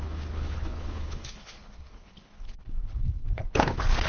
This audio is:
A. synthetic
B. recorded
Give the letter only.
A